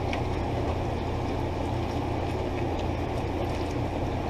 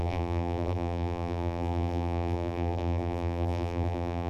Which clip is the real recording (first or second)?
first